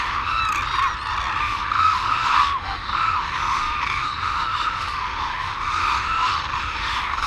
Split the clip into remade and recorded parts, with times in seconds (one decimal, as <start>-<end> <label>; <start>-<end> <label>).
0.0-0.4 remade; 0.4-1.4 recorded; 1.4-7.3 remade

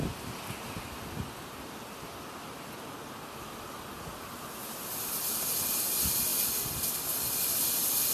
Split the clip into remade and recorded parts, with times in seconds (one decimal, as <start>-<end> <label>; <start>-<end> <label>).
0.0-8.1 recorded